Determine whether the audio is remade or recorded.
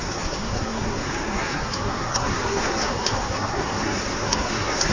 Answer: remade